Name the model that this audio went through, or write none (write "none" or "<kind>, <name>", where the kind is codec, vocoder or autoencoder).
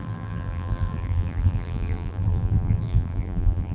vocoder, BigVGAN v2